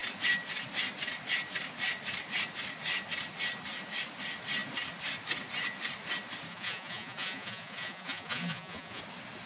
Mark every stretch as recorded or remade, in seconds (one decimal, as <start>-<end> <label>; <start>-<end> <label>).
0.0-6.5 recorded; 6.5-9.0 remade; 9.0-9.5 recorded